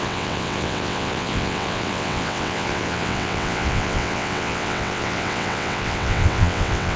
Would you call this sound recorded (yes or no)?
no